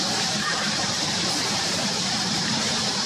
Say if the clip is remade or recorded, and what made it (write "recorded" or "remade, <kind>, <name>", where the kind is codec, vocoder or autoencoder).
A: remade, vocoder, BigVGAN v2